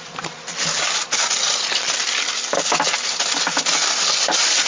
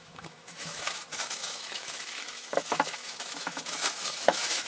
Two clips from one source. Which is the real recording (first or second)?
first